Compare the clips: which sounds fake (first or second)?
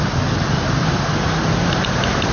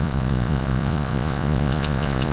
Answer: second